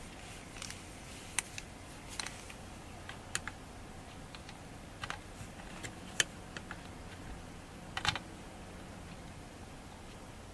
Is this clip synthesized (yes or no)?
no